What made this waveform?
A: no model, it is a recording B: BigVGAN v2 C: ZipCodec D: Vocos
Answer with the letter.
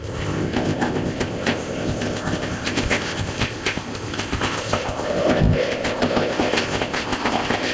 C